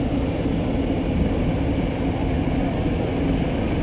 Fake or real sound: real